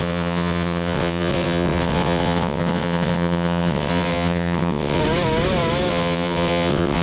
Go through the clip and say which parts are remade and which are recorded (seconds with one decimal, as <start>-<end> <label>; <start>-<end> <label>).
0.0-5.0 remade; 5.0-5.9 recorded; 5.9-7.0 remade

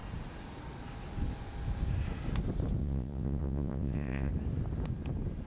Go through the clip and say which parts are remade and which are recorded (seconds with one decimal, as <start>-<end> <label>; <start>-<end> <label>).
0.0-2.8 recorded; 2.8-4.3 remade; 4.3-5.5 recorded

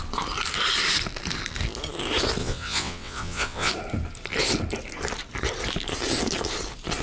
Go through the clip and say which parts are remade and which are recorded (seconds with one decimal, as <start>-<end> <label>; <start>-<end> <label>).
0.0-2.4 recorded; 2.4-3.7 remade; 3.7-7.0 recorded

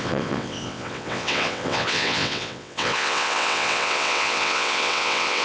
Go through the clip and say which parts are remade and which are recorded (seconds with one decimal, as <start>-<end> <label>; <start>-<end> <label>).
0.0-5.4 remade

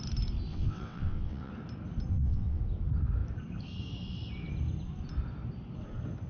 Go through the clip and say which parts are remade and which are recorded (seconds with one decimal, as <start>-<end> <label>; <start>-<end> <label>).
0.0-0.5 recorded; 0.5-1.5 remade; 1.5-2.1 recorded; 2.1-2.6 remade; 2.6-6.3 recorded

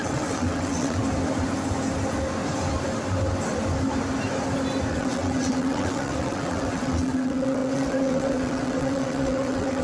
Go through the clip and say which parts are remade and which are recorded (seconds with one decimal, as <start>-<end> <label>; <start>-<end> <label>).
0.0-1.0 remade; 1.0-4.9 recorded; 4.9-9.8 remade